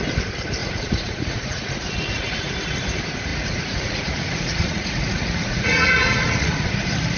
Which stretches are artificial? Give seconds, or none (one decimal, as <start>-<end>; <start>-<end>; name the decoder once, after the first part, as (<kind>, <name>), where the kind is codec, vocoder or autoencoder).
0.6-2.5 (vocoder, Vocos); 3.3-6.7